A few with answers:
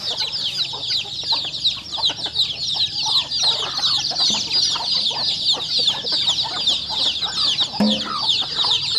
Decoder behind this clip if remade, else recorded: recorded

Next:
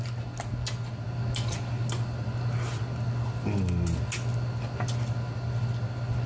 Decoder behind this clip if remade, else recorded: recorded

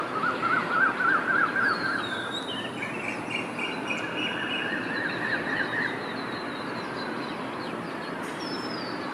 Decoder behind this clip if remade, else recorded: remade, vocoder, BigVGAN v2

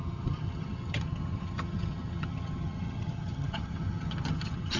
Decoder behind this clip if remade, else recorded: remade, vocoder, HiFi-GAN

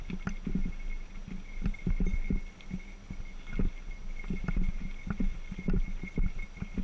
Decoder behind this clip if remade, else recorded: recorded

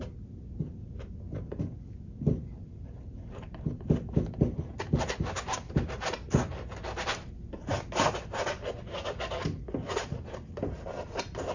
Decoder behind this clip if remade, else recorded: recorded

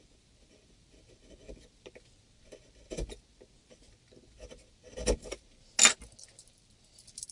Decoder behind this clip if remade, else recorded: recorded